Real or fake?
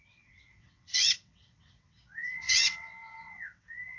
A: fake